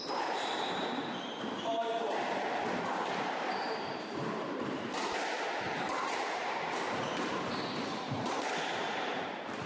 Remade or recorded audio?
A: remade